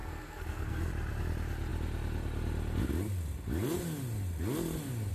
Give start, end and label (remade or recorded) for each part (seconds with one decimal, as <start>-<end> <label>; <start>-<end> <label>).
0.0-0.9 remade; 0.9-5.1 recorded